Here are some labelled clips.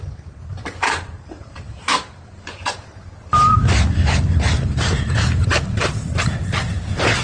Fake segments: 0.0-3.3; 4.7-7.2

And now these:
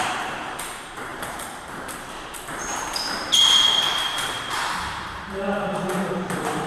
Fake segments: 0.0-6.7

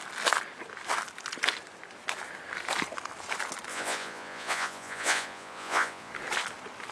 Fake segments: 3.7-6.1

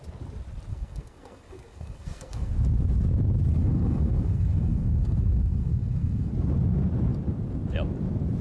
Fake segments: 0.7-2.5; 3.6-6.3

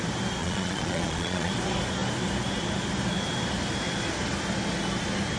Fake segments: 0.4-1.5